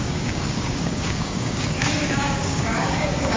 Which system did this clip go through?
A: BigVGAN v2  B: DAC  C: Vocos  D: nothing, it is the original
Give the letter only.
B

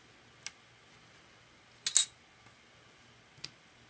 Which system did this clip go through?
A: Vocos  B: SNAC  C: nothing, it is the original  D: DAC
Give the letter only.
C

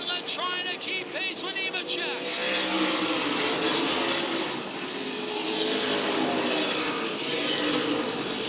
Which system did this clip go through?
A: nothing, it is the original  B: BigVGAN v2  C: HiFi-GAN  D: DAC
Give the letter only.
A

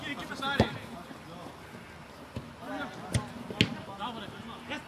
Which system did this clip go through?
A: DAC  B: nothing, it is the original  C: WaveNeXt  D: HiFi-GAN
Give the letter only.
B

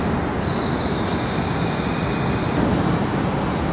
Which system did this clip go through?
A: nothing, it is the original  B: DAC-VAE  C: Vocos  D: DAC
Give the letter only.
A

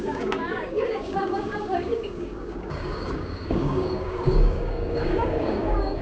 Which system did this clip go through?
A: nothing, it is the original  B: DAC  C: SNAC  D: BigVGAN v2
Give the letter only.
B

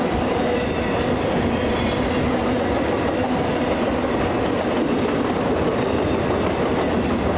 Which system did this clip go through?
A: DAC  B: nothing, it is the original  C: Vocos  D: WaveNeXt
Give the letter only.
B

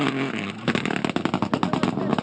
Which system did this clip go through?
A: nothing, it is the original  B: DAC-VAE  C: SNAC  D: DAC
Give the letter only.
A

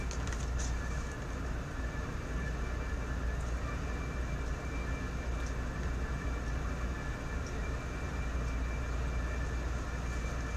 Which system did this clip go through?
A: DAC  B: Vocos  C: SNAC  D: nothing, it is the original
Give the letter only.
D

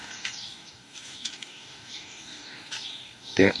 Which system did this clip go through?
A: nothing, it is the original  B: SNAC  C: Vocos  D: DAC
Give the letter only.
D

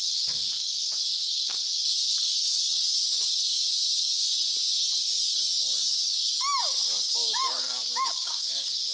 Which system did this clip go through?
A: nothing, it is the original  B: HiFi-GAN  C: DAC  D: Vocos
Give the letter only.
C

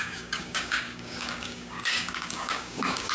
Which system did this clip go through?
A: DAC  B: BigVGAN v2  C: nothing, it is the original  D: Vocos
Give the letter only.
A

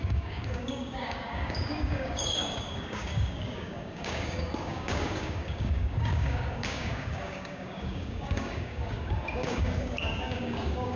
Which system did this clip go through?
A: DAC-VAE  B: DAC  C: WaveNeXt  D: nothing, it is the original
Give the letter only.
B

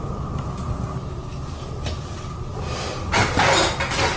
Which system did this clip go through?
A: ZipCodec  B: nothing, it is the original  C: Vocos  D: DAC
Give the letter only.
B